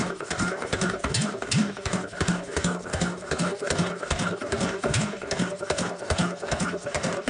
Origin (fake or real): fake